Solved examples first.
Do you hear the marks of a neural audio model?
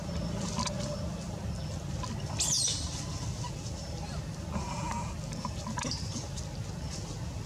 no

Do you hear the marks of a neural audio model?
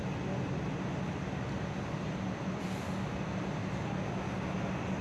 no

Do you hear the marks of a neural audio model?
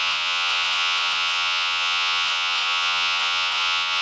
yes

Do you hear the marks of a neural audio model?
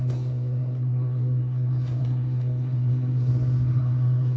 yes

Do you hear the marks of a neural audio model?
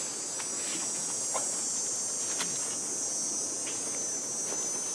no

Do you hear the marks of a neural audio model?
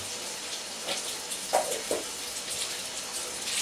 no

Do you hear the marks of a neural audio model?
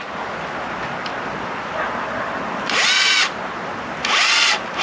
no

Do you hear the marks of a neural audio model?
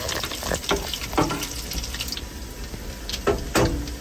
yes